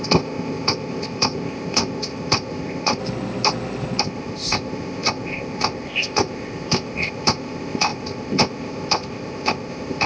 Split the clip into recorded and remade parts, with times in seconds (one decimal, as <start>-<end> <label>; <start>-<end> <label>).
0.0-3.0 remade; 3.0-4.0 recorded; 4.0-10.1 remade